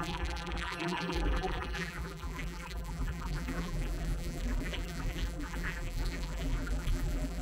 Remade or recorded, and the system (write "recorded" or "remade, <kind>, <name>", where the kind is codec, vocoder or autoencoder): remade, vocoder, BigVGAN v2